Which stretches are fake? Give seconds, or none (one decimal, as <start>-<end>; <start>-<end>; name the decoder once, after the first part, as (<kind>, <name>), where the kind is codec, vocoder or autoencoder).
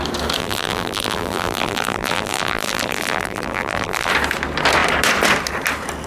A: 0.4-4.1 (vocoder, BigVGAN v2)